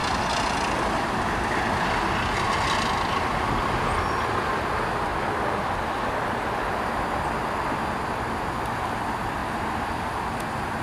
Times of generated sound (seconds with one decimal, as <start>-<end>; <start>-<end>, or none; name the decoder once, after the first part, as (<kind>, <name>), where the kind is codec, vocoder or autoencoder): 9.4-10.1 (vocoder, BigVGAN v2)